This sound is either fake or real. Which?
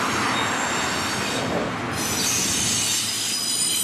real